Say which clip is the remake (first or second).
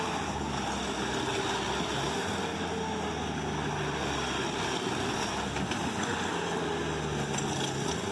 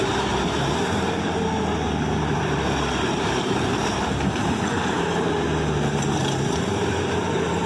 second